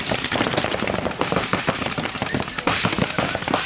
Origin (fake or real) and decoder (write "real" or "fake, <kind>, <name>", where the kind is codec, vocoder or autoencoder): fake, vocoder, BigVGAN v2